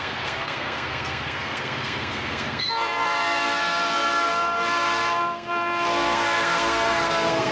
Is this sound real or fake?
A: fake